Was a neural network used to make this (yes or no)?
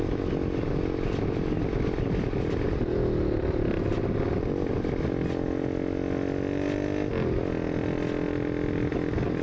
no